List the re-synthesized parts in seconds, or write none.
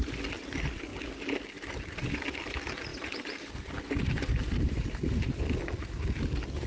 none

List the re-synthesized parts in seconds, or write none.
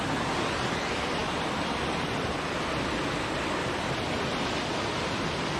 none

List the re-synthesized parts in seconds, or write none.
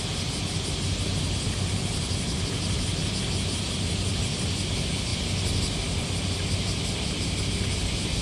none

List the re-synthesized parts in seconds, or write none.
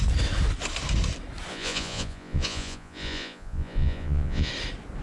1.5-4.5 (vocoder, Vocos)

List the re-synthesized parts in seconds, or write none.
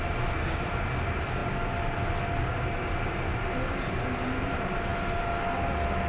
none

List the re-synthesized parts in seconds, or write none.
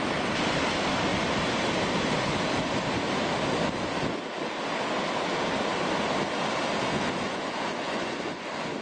6.9-8.8 (vocoder, Vocos)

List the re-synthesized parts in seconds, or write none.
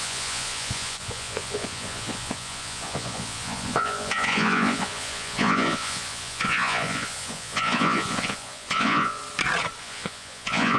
0.0-9.2 (vocoder, Vocos); 9.8-10.8